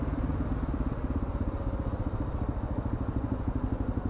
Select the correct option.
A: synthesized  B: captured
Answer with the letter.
B